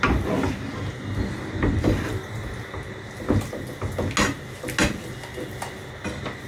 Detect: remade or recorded recorded